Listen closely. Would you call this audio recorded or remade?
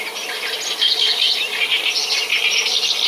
recorded